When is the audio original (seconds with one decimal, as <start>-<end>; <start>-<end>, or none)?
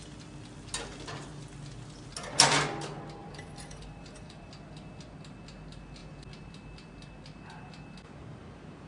0.0-3.2; 4.5-8.9